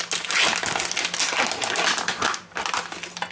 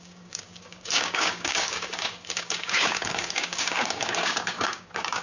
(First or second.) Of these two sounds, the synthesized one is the second